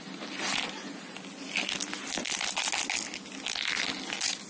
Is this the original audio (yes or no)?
yes